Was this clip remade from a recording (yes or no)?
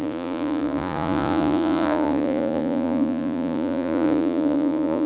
yes